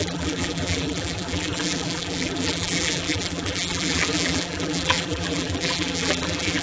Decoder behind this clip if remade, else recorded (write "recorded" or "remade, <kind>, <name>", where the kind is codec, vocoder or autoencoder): remade, vocoder, BigVGAN v2